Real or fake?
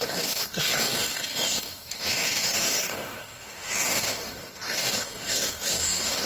fake